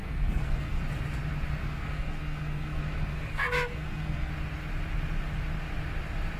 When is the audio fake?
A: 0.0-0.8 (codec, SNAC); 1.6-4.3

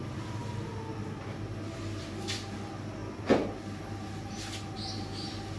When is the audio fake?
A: none

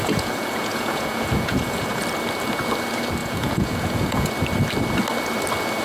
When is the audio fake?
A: 0.0-2.0 (vocoder, Vocos); 3.2-4.3

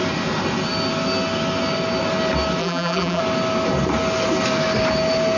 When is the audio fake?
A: 2.6-3.2 (vocoder, BigVGAN v2)

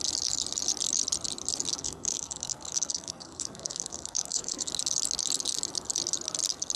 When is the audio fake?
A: 1.7-4.7 (codec, SNAC)

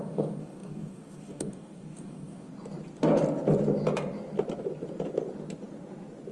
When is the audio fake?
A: 0.0-2.5 (codec, DAC)

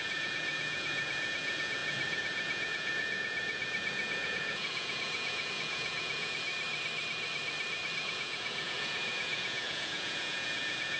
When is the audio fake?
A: 0.0-6.5 (vocoder, Vocos); 8.0-11.0

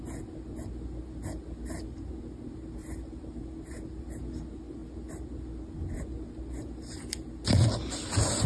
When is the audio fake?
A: 2.8-3.4 (vocoder, BigVGAN v2)